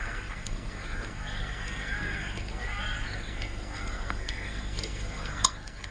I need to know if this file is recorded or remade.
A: remade